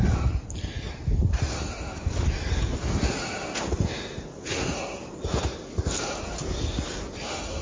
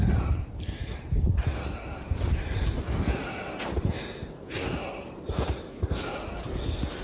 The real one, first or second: first